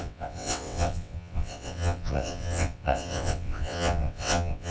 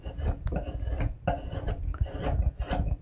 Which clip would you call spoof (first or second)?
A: first